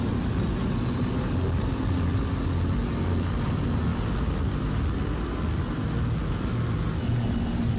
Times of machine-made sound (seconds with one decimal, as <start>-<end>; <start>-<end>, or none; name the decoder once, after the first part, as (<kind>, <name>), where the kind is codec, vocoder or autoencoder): none